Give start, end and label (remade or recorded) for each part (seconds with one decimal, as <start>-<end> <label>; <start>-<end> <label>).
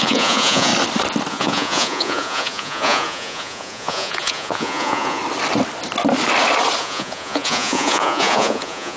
0.0-0.7 remade; 0.7-1.3 recorded; 1.3-5.2 remade; 5.2-6.8 recorded; 6.8-9.0 remade